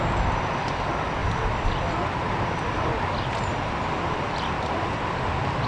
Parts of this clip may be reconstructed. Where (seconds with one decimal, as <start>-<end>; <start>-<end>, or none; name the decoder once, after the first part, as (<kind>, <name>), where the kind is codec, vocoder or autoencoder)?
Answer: none